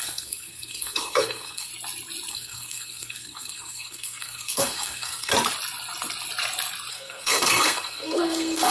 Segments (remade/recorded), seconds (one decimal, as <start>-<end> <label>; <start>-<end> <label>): 0.0-1.7 remade; 1.7-2.3 recorded; 2.3-5.3 remade; 5.3-6.9 recorded; 6.9-8.7 remade